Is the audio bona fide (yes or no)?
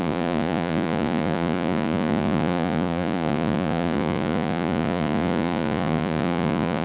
no